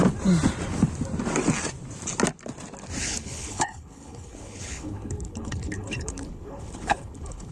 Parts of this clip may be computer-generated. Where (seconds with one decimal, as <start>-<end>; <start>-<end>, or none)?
3.0-7.5

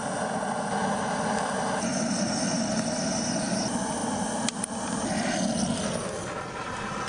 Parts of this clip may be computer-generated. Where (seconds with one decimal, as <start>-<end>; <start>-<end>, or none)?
none

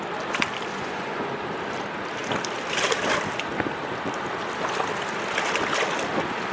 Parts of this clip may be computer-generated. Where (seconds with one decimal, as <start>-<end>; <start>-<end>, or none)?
0.7-1.3

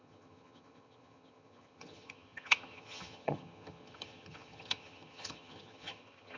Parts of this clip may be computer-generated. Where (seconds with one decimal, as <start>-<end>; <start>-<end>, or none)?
0.0-6.4